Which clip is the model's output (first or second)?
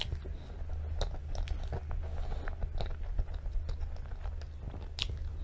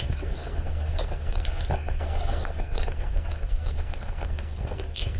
second